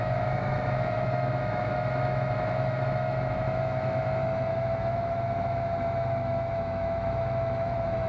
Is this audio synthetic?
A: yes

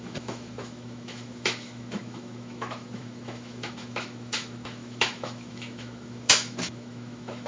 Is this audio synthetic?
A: yes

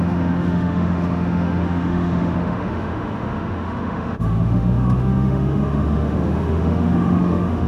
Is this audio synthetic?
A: yes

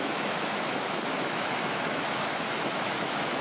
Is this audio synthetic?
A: yes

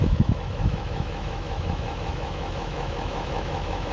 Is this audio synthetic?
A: yes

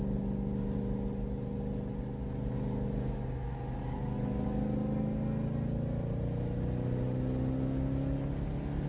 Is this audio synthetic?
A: no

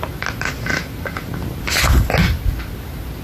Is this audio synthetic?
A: no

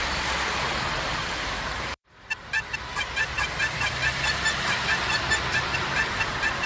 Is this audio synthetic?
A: no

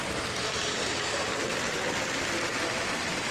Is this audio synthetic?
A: no